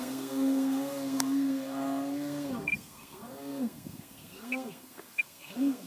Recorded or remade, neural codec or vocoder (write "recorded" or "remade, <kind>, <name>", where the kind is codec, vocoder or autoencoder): remade, codec, SNAC